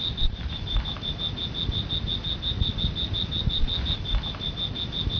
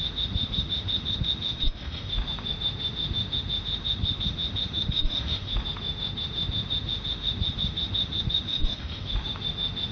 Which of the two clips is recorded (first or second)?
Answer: first